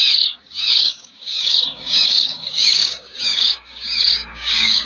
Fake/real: fake